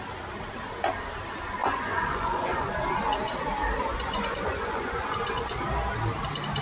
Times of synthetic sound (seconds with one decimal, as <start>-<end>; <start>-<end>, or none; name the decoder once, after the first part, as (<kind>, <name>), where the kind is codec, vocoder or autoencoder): 1.6-2.7 (vocoder, Vocos); 3.9-5.6